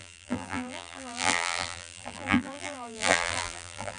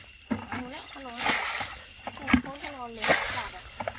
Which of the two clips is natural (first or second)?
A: second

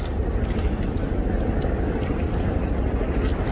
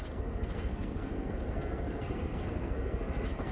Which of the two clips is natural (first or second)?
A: first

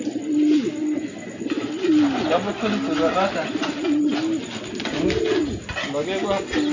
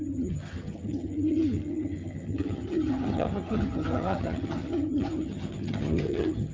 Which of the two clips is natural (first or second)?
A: first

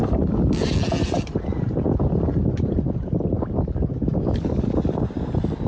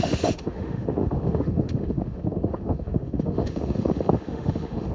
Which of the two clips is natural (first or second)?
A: first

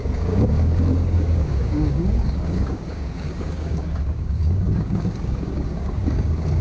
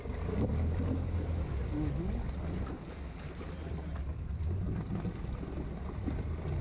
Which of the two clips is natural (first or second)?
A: second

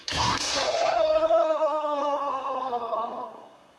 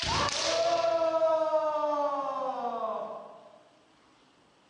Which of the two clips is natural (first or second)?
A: second